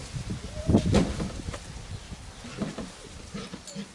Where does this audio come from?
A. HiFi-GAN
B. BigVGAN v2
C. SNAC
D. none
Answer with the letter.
D